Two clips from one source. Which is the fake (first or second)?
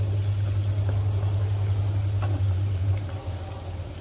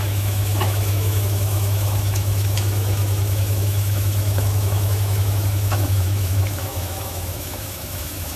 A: second